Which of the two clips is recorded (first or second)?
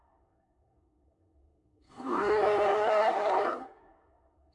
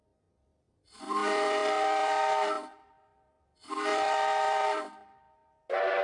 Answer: second